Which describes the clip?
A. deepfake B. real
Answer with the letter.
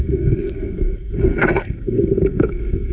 A